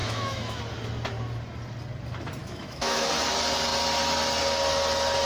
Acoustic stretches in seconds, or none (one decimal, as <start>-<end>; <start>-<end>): 0.6-2.4; 3.1-5.3